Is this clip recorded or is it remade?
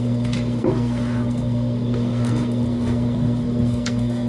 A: remade